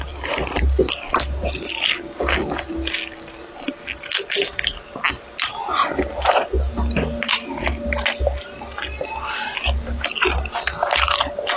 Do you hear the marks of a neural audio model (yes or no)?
no